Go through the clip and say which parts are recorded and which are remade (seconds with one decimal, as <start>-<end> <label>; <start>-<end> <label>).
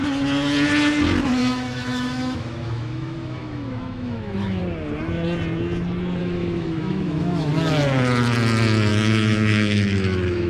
0.0-1.4 recorded; 1.4-4.6 remade; 4.6-6.2 recorded; 6.2-7.5 remade; 7.5-8.9 recorded; 8.9-10.5 remade